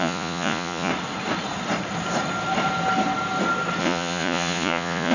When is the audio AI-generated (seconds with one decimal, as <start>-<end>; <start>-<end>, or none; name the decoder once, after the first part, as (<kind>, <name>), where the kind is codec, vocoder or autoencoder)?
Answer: 0.0-0.9 (vocoder, Vocos); 3.8-5.1